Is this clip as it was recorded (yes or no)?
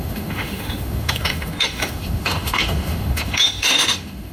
no